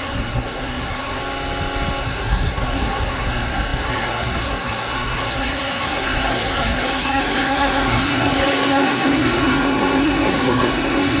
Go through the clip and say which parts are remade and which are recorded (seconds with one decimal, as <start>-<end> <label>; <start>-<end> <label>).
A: 0.0-1.2 remade; 1.2-2.0 recorded; 2.0-11.2 remade

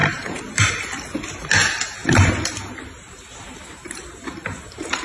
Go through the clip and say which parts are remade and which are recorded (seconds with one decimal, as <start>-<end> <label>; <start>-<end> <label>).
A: 0.0-0.7 remade; 0.7-2.0 recorded; 2.0-5.0 remade